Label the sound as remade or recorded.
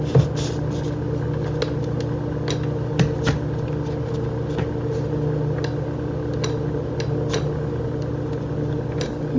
recorded